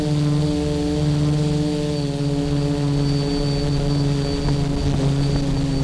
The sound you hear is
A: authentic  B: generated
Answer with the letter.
A